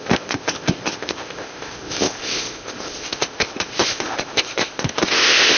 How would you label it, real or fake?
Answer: fake